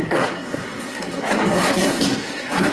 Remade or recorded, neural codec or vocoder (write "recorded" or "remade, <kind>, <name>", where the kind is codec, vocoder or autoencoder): remade, codec, SNAC